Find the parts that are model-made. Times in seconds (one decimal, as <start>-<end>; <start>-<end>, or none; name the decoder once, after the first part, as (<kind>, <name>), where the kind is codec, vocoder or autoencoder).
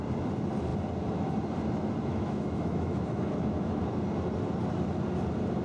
2.1-3.8 (autoencoder, DAC-VAE)